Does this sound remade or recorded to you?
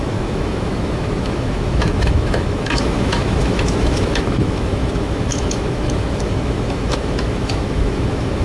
remade